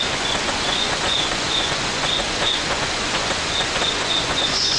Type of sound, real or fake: fake